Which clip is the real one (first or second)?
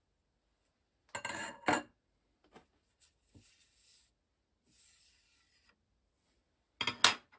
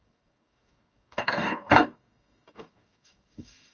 first